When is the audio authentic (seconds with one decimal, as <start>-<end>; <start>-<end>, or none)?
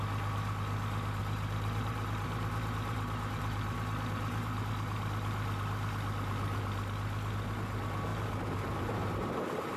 0.0-1.2; 4.7-8.1